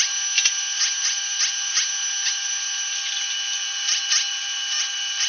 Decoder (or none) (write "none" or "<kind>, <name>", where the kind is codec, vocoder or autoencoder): none